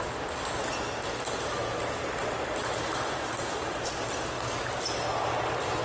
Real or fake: real